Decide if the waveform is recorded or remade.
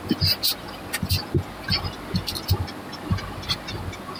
recorded